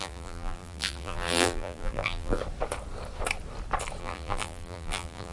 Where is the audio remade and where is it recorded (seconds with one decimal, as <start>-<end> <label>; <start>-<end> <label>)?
0.0-2.4 remade; 2.4-4.0 recorded; 4.0-5.3 remade